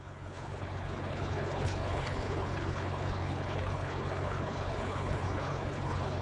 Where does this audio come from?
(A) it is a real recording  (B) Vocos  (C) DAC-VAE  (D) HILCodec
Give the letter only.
D